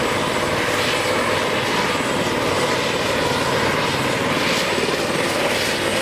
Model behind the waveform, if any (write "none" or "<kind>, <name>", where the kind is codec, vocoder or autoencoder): none